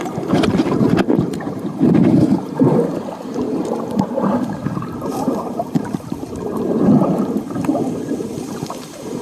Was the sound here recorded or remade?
remade